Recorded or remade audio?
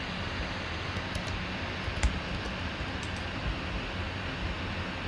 recorded